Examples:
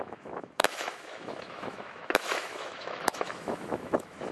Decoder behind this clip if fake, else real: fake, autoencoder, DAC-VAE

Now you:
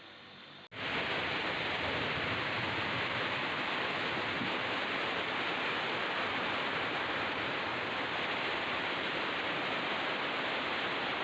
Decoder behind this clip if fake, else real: real